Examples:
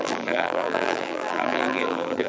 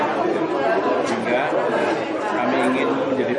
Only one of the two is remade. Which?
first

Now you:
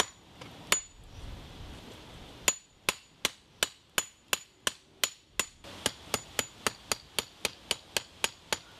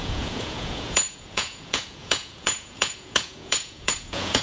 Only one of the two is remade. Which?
second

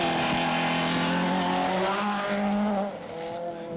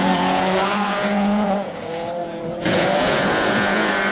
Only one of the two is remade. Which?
second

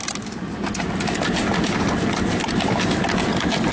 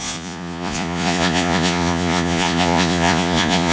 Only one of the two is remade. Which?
second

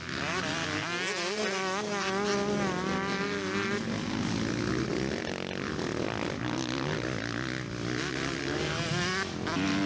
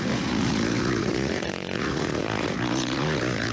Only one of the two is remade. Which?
second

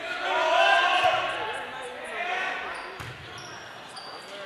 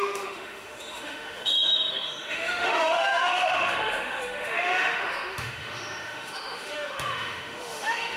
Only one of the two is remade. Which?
second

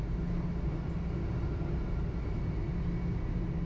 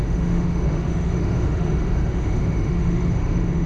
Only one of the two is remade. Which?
second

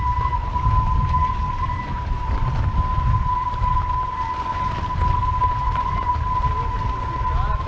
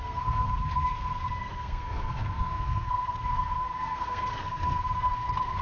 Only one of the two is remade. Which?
second